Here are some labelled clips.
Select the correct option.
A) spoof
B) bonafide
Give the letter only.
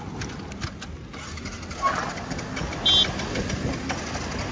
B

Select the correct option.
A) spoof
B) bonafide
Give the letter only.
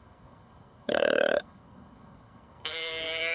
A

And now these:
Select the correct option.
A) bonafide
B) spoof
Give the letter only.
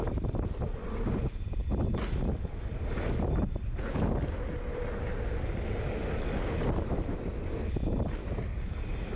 A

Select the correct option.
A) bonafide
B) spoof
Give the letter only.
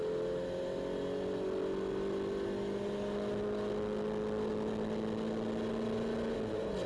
A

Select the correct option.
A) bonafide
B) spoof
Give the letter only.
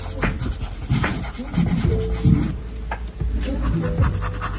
A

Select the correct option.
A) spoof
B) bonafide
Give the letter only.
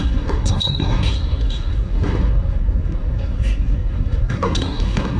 A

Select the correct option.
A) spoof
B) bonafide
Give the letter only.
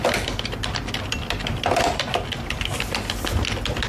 B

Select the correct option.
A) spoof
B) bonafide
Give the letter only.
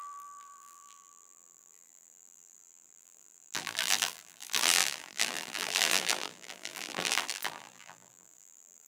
A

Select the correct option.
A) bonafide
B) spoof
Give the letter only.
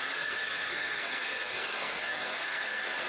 B